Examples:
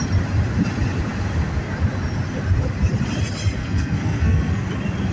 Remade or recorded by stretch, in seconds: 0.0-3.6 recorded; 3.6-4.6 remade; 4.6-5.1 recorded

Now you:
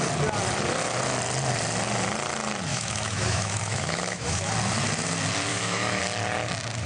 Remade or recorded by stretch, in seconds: 0.0-2.7 recorded; 2.7-4.5 remade; 4.5-5.5 recorded; 5.5-6.0 remade; 6.0-6.9 recorded